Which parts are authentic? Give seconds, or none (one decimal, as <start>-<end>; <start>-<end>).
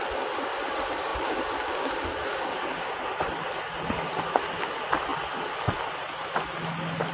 0.0-7.1